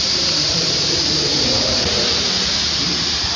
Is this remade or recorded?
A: remade